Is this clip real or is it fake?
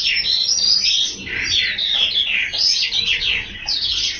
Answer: real